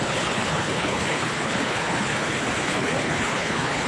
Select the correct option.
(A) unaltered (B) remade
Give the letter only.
B